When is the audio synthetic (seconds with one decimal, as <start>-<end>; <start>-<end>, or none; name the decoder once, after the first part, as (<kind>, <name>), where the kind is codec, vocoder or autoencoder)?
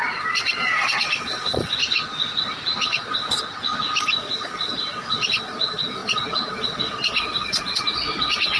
0.0-1.8 (vocoder, Vocos); 2.8-3.4; 4.2-8.6